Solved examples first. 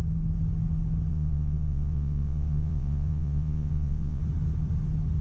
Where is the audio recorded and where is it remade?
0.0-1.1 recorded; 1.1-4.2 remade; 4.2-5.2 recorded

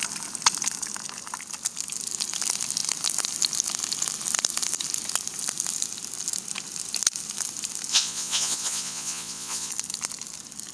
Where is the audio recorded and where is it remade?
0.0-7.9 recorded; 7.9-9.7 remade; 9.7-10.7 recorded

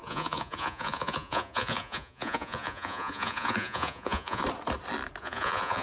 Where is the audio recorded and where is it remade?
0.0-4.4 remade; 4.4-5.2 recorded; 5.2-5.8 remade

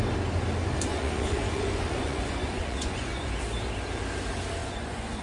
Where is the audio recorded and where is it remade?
0.0-0.9 recorded; 0.9-3.3 remade; 3.3-4.6 recorded; 4.6-5.2 remade